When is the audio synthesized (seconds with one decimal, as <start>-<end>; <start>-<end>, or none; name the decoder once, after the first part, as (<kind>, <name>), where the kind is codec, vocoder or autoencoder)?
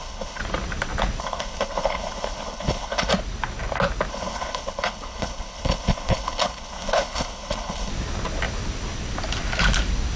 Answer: 0.0-0.4 (codec, HILCodec); 1.2-3.1; 4.1-7.9